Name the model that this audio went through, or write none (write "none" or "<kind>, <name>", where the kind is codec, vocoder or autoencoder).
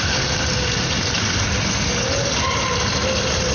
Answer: none